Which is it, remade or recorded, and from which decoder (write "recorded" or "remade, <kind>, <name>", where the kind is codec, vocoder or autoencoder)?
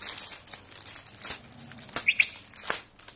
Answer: recorded